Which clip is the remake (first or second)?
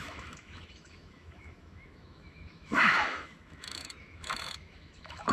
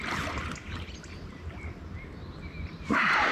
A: first